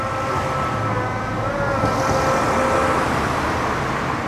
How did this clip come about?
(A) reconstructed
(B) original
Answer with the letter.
B